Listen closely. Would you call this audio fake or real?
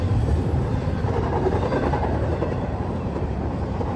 fake